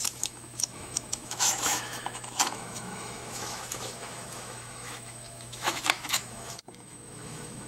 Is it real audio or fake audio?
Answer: fake